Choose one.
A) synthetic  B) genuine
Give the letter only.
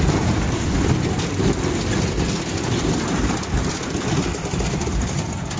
B